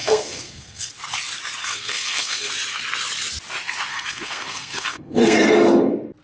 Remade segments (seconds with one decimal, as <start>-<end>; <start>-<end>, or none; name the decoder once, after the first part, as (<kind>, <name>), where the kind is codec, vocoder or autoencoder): 0.0-0.9 (codec, SNAC); 1.6-2.5; 3.9-5.5